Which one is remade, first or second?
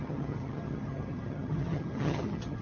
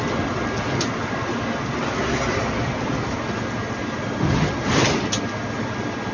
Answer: first